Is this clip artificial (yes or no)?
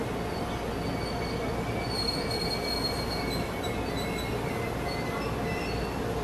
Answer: no